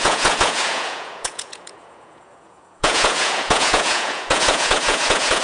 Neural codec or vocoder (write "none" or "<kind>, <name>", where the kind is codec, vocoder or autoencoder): vocoder, Vocos